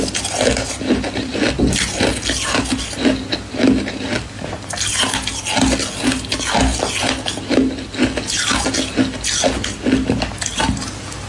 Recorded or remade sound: recorded